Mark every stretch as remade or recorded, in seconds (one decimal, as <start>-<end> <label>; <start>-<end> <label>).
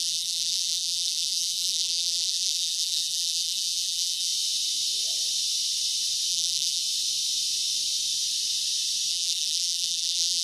0.0-4.3 remade; 4.3-6.3 recorded; 6.3-6.8 remade; 6.8-9.1 recorded; 9.1-10.4 remade